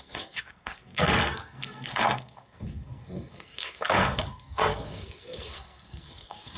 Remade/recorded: remade